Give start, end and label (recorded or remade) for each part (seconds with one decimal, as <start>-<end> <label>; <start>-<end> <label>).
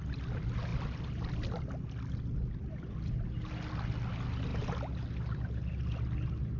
0.0-6.6 recorded